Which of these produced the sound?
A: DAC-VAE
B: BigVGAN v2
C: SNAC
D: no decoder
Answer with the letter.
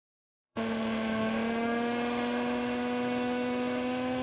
A